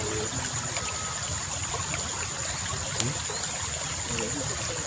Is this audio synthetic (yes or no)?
no